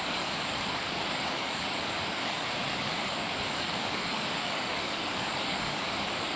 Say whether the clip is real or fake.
fake